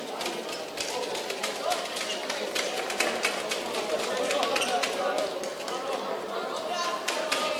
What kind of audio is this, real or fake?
fake